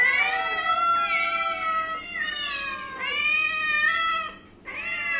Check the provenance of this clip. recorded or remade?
recorded